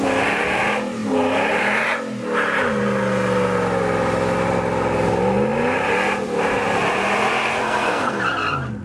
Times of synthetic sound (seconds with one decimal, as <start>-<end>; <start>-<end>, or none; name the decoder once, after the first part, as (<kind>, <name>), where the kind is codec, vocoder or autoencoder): 7.6-8.2 (codec, SNAC)